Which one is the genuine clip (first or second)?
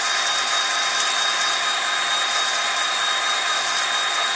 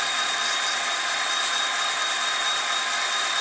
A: first